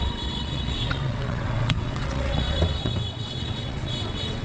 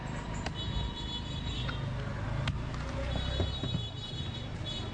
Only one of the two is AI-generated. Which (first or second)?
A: first